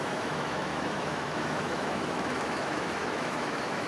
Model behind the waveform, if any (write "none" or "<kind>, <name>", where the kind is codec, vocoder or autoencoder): autoencoder, DAC-VAE